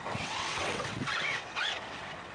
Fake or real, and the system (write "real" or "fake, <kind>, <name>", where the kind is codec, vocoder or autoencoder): fake, vocoder, WaveNeXt